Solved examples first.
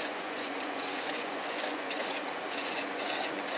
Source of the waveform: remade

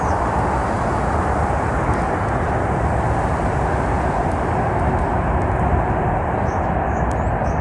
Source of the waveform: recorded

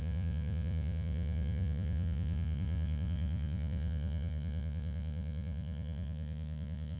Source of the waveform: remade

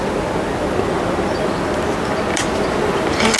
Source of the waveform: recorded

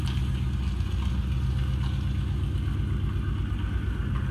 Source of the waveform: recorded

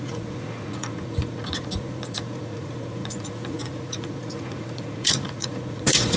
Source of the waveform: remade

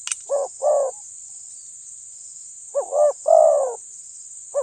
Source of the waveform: recorded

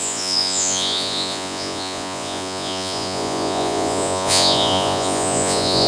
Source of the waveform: remade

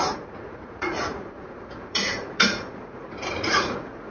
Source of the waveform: remade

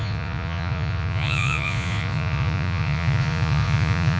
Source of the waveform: remade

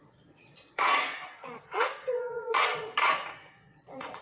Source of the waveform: remade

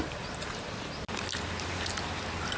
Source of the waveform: recorded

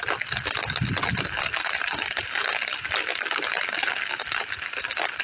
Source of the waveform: recorded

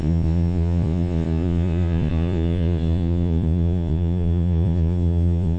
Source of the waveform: remade